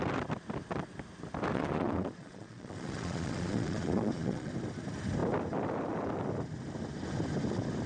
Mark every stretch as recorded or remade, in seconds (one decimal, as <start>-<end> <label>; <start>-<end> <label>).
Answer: 0.0-1.5 recorded; 1.5-4.5 remade; 4.5-7.9 recorded